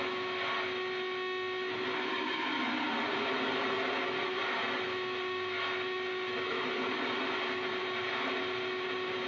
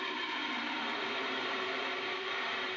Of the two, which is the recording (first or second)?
first